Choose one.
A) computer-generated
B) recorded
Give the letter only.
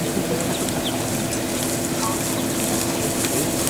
B